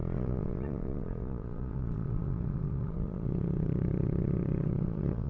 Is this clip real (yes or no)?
no